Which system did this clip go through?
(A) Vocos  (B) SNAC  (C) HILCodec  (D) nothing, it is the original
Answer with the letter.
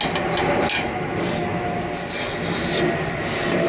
D